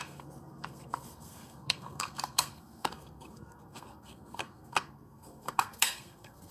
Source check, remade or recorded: remade